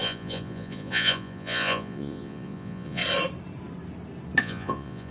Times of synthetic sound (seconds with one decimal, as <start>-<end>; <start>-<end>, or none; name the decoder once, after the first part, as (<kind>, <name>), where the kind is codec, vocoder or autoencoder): 0.0-3.0 (vocoder, Vocos); 4.4-5.1